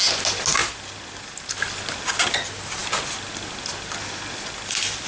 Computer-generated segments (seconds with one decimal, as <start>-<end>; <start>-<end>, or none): none

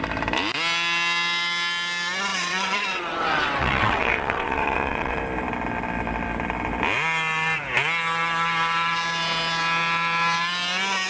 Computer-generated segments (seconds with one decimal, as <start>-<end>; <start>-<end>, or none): 2.3-5.2

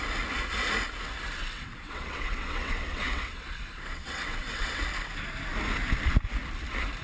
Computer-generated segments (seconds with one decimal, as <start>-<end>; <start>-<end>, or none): 1.4-4.8

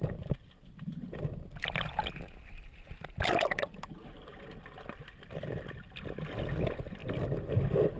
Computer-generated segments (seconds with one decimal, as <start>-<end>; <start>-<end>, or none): none